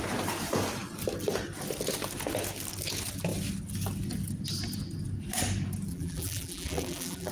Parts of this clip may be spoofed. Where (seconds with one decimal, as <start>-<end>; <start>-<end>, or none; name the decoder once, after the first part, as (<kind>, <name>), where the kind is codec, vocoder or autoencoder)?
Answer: 5.9-7.3 (vocoder, BigVGAN v2)